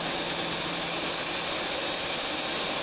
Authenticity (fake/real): real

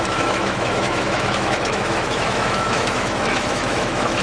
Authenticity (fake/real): fake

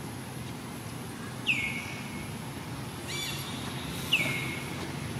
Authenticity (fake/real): real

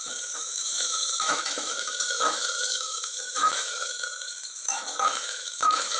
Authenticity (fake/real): fake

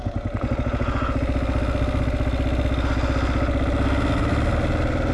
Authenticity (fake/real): real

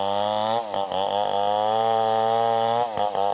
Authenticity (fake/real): real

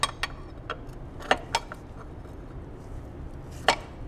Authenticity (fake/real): real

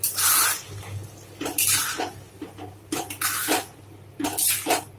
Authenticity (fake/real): real